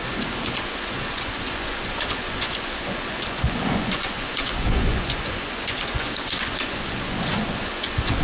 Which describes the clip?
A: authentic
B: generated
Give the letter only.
B